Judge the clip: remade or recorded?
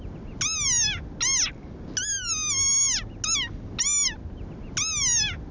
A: recorded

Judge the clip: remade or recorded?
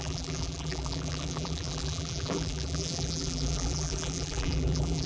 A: remade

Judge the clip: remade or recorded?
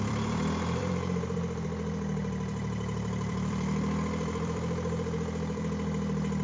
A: remade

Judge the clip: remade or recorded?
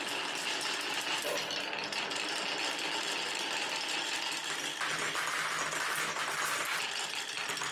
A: recorded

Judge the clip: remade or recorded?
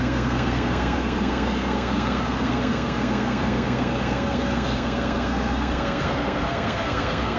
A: remade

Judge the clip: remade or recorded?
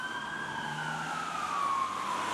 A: recorded